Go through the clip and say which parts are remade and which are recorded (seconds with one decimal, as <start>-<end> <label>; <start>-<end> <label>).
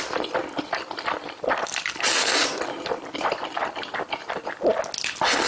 0.0-0.4 recorded; 0.4-3.5 remade; 3.5-5.5 recorded